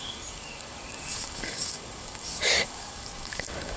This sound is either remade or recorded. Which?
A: remade